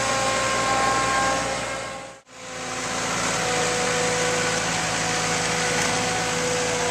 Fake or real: real